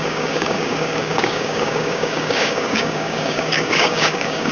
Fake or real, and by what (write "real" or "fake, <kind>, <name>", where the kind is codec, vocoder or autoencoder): fake, codec, DAC